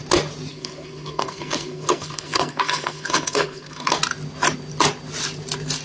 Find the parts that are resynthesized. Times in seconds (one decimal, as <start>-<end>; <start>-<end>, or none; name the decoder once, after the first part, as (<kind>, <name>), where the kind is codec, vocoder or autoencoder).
0.5-4.0 (codec, SNAC)